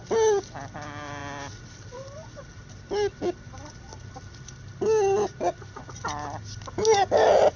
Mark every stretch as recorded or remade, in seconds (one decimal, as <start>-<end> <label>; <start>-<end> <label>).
0.0-7.6 recorded